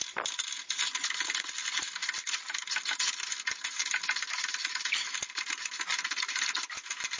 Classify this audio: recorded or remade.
recorded